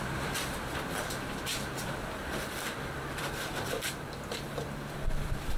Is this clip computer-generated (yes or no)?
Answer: yes